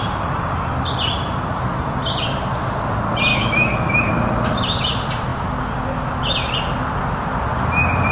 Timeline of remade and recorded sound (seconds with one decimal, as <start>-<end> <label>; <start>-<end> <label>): 0.0-3.3 recorded; 3.3-4.1 remade; 4.1-8.1 recorded